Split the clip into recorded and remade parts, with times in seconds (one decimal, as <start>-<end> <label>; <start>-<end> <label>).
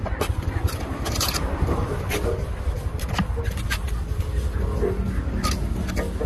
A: 0.0-4.0 recorded; 4.0-4.6 remade; 4.6-6.3 recorded